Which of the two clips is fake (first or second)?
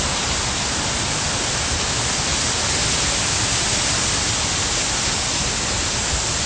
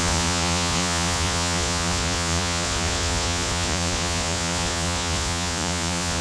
second